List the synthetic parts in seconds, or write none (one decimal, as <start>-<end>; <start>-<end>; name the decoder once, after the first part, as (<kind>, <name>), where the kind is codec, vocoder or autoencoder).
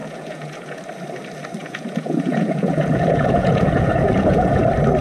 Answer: 0.0-0.8 (vocoder, Vocos); 1.6-4.6